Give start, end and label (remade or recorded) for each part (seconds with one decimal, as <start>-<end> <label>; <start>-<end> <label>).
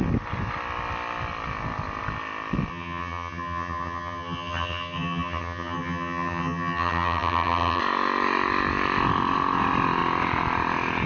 0.0-2.7 recorded; 2.7-7.8 remade; 7.8-11.1 recorded